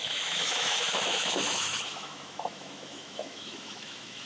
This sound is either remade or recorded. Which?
remade